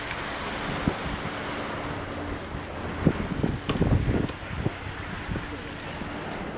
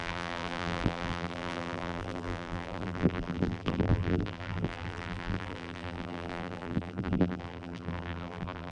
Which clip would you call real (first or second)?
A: first